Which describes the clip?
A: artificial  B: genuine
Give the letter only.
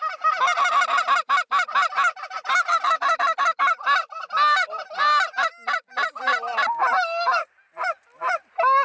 B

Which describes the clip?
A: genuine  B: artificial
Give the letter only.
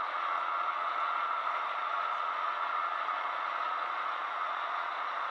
B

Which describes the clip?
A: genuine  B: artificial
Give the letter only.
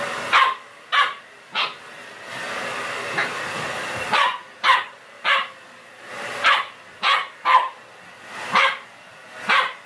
A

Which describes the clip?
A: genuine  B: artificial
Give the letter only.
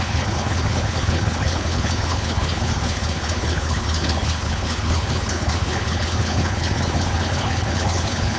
B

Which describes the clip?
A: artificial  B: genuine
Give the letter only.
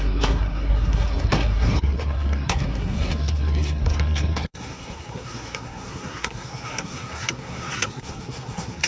A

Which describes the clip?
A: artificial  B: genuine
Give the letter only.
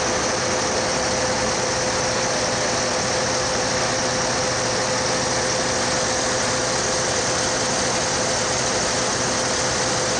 B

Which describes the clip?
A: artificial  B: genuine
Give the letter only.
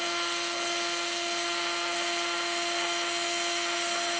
B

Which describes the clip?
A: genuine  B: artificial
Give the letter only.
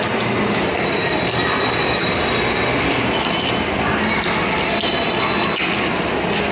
A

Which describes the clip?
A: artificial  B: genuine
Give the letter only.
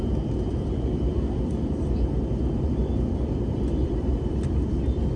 A